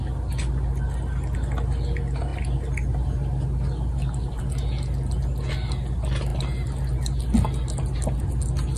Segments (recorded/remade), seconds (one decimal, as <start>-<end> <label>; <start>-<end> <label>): 0.0-8.8 recorded

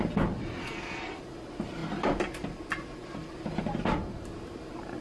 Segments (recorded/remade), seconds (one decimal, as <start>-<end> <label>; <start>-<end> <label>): 0.0-0.6 recorded; 0.6-1.2 remade; 1.2-5.0 recorded